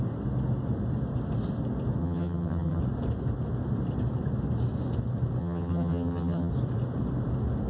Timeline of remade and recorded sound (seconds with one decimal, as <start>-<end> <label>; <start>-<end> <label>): 0.0-2.0 recorded; 2.0-2.8 remade; 2.8-5.4 recorded; 5.4-6.5 remade; 6.5-7.7 recorded